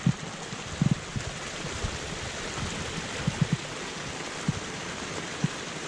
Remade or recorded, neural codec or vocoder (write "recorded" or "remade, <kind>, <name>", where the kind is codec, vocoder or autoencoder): recorded